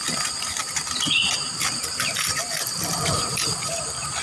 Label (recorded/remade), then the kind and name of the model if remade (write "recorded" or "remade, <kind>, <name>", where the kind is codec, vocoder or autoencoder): recorded